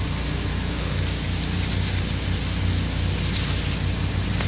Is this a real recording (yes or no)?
yes